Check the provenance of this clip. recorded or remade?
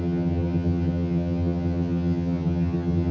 remade